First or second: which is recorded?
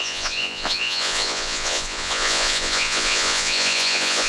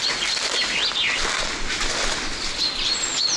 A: second